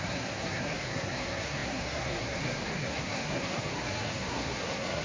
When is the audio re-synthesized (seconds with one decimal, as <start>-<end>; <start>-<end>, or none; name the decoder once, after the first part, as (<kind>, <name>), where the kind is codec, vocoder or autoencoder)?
0.0-5.0 (codec, SNAC)